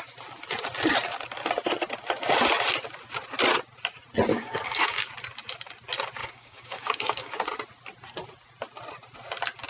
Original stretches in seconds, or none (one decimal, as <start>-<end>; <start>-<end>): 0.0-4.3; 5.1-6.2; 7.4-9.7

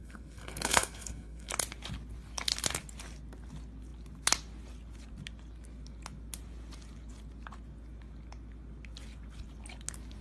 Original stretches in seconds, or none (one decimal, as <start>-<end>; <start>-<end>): 1.5-10.2

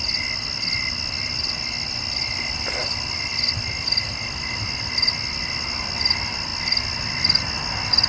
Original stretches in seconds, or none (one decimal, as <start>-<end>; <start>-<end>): 0.0-8.1

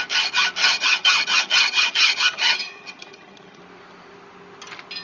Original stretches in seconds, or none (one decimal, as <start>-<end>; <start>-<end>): 0.0-0.6; 3.6-5.0